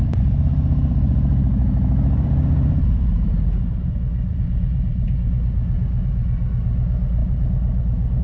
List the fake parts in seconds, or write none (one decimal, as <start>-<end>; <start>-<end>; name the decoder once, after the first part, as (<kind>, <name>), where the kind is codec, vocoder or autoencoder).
0.0-3.5 (vocoder, BigVGAN v2); 4.3-5.3